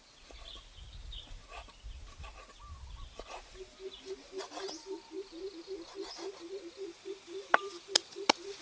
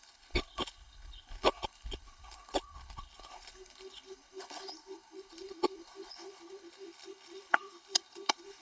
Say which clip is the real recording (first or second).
first